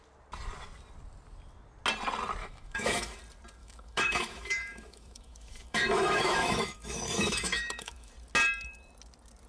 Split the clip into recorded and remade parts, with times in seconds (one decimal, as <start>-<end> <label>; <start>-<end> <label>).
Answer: 0.0-2.4 recorded; 2.4-3.2 remade; 3.2-3.6 recorded; 3.6-8.1 remade; 8.1-9.5 recorded